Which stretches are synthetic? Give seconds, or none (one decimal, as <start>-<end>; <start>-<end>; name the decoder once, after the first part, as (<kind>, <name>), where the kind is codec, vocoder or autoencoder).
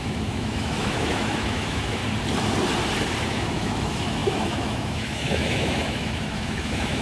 0.0-2.0 (autoencoder, DAC-VAE); 3.2-7.0